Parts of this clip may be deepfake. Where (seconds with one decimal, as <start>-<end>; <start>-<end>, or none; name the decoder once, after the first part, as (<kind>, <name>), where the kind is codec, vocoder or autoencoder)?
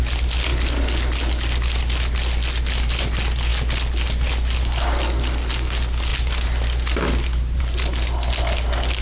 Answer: none